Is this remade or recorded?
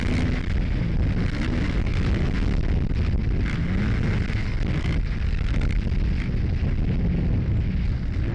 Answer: recorded